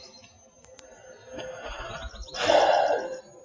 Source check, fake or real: real